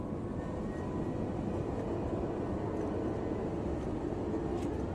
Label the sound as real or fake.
real